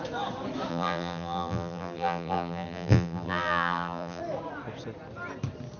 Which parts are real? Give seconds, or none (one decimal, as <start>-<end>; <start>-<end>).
0.0-0.7; 4.2-5.8